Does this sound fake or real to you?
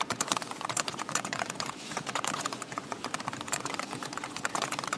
fake